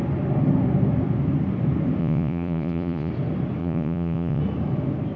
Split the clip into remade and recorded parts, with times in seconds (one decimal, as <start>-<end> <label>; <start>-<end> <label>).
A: 0.0-2.0 recorded; 2.0-3.1 remade; 3.1-3.6 recorded; 3.6-4.4 remade; 4.4-5.2 recorded